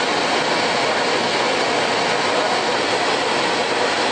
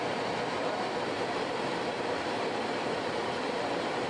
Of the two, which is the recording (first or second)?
first